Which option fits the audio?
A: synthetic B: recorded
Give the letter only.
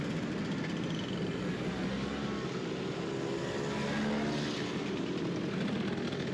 B